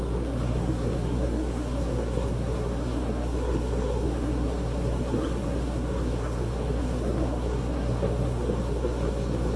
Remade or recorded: remade